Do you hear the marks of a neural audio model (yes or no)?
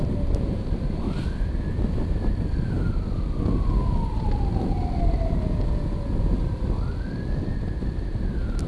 no